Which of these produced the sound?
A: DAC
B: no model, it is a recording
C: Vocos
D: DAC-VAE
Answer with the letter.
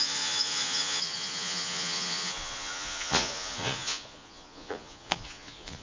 C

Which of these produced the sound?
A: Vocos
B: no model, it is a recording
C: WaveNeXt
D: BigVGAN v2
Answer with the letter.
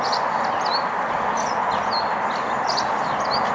B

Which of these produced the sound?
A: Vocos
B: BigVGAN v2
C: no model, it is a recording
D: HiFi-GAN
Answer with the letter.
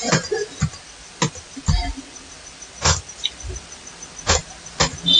C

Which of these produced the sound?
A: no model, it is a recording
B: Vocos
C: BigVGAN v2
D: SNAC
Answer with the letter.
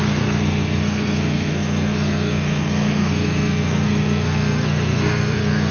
D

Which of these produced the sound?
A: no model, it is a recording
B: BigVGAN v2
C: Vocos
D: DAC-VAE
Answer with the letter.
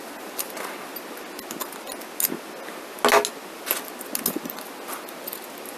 A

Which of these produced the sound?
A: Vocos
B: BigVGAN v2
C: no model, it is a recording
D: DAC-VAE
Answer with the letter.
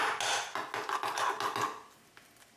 C